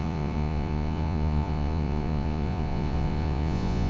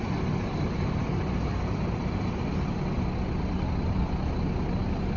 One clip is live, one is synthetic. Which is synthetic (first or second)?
first